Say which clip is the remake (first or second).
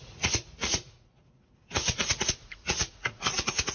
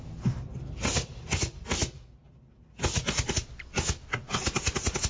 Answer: first